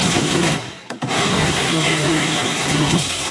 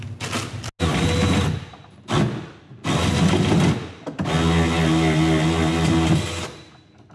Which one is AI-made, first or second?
first